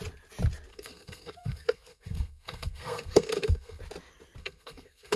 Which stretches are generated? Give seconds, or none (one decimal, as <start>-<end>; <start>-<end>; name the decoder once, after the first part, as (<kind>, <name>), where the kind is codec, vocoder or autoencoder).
0.7-3.8 (codec, SNAC); 4.4-5.2